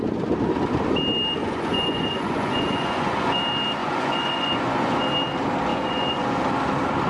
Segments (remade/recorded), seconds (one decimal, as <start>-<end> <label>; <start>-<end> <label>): 0.0-1.4 recorded; 1.4-3.4 remade; 3.4-3.8 recorded; 3.8-5.0 remade; 5.0-5.7 recorded; 5.7-6.4 remade; 6.4-7.1 recorded